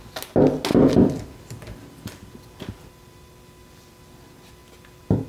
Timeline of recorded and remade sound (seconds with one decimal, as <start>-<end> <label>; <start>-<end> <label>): 0.0-0.7 recorded; 0.7-2.3 remade; 2.3-5.3 recorded